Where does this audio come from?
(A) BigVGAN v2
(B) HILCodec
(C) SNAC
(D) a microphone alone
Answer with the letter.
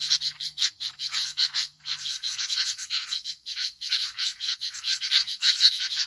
C